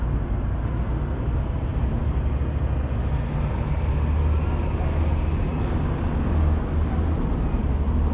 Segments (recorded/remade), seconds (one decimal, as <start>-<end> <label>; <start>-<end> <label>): 0.0-8.1 recorded